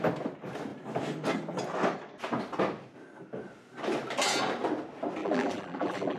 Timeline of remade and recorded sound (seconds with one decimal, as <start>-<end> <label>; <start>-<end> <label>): 0.0-5.2 recorded; 5.2-6.2 remade